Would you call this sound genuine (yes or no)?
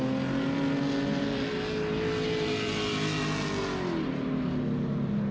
yes